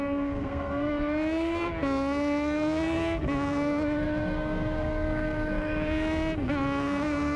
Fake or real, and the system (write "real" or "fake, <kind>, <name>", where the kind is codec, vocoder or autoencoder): fake, codec, SNAC